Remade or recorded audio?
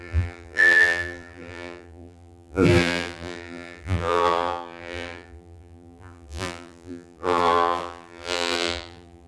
remade